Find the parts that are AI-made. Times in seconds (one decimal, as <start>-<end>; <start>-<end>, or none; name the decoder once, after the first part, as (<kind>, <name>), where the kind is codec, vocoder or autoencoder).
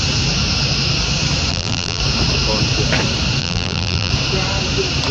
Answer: 1.5-2.0 (vocoder, BigVGAN v2); 3.4-4.1